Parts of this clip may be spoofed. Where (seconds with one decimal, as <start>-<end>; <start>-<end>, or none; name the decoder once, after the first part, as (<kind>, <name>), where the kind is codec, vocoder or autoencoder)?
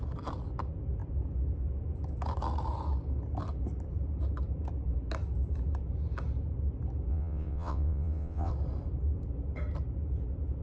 7.1-8.5 (vocoder, WaveNeXt)